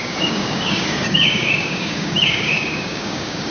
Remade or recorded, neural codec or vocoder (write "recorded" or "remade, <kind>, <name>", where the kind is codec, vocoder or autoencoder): remade, codec, DAC